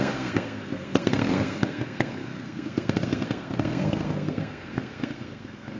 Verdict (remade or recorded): remade